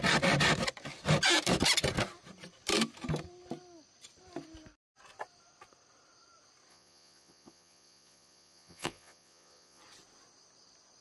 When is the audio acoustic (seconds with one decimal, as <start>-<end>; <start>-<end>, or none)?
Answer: 0.0-6.7; 9.8-11.0